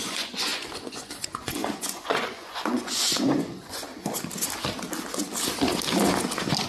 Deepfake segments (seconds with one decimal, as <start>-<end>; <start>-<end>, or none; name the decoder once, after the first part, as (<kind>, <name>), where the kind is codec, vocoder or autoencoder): 0.0-3.9 (vocoder, Vocos)